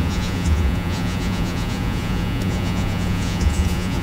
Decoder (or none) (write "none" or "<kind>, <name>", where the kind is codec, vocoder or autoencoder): vocoder, Vocos